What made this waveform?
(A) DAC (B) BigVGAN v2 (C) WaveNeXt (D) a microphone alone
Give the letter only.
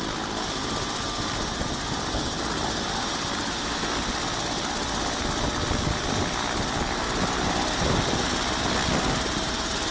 D